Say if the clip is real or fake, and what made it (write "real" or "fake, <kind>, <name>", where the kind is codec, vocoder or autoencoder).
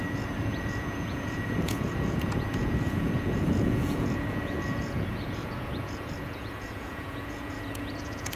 fake, vocoder, Vocos